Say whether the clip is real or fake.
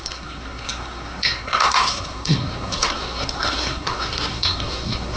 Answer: fake